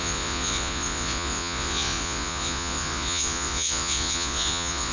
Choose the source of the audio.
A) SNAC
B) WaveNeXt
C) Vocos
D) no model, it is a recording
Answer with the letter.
C